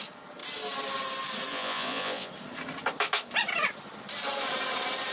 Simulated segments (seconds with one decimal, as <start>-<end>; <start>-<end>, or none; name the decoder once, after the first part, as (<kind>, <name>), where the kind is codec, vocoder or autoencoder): 1.5-2.3 (vocoder, Vocos)

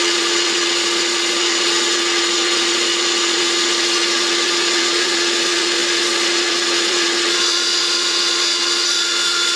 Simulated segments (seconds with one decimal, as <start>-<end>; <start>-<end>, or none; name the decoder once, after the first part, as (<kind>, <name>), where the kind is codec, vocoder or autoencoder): 0.0-9.6 (vocoder, Vocos)

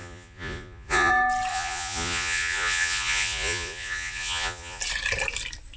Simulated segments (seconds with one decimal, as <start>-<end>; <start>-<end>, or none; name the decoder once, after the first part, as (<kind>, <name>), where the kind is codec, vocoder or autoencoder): 0.0-1.1 (vocoder, Vocos); 1.5-4.8

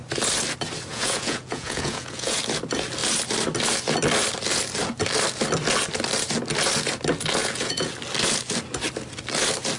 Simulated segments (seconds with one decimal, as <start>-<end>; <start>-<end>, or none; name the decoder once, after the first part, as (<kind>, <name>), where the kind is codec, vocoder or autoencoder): 0.9-2.4 (vocoder, Vocos); 7.4-7.9